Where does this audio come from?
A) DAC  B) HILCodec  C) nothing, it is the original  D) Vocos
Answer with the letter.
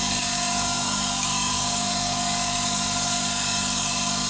A